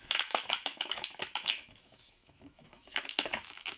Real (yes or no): no